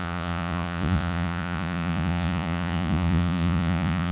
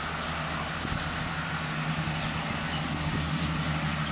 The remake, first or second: first